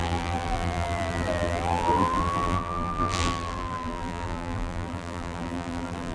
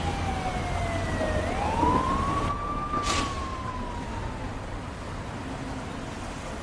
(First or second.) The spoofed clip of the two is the first